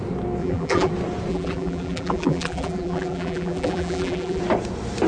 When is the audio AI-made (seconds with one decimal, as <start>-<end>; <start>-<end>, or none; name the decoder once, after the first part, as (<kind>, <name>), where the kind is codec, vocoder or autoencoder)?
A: 0.4-0.9 (vocoder, BigVGAN v2); 1.3-4.4